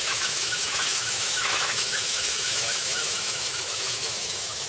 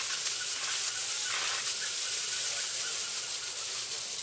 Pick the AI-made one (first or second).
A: first